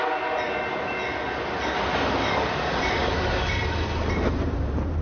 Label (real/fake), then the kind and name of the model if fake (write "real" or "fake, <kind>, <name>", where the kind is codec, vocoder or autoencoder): real